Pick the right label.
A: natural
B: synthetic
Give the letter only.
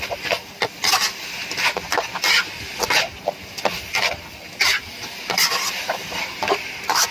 A